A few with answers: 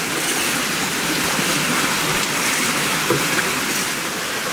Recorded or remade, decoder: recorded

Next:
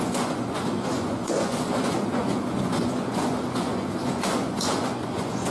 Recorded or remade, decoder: remade, vocoder, Vocos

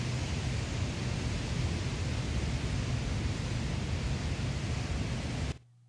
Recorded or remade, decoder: recorded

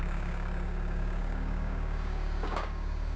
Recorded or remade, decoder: remade, codec, DAC